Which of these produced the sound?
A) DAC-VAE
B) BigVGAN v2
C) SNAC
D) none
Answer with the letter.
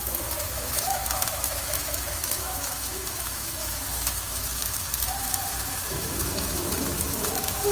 A